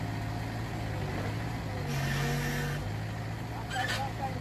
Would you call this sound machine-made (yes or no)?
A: no